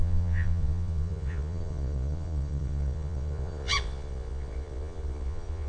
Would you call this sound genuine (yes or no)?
no